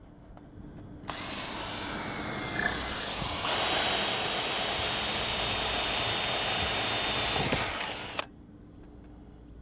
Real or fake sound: real